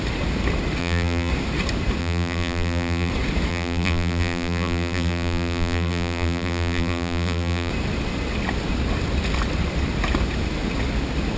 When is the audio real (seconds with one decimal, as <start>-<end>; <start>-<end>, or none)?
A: 0.0-0.8; 1.3-2.0; 3.1-3.5; 7.7-11.4